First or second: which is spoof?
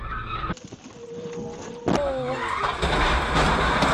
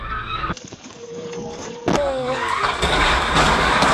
second